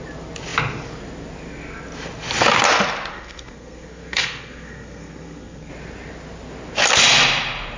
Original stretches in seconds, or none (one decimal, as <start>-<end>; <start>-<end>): 0.0-3.1; 5.7-7.8